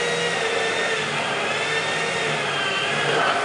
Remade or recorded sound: recorded